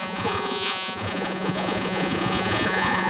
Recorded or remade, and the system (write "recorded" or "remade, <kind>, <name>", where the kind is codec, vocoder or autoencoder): remade, vocoder, Vocos